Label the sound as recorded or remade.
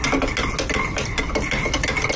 recorded